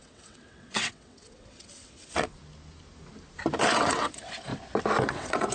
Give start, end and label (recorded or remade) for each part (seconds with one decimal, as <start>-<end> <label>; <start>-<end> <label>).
0.0-2.4 remade; 2.4-3.6 recorded; 3.6-4.5 remade; 4.5-5.0 recorded; 5.0-5.5 remade